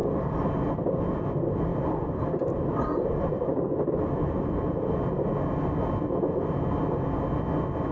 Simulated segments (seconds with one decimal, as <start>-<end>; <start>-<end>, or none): 0.0-0.5; 1.7-4.9